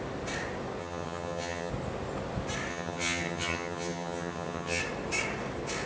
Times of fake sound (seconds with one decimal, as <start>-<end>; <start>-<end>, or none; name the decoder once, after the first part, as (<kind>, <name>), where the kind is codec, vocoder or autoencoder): 0.8-1.7 (vocoder, HiFi-GAN); 2.7-4.8